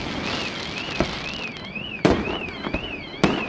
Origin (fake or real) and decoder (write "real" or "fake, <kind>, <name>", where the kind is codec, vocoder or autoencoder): real